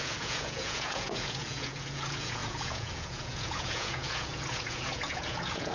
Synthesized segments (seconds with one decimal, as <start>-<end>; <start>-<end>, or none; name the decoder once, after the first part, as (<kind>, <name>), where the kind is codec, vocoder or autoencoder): 0.0-5.7 (vocoder, Vocos)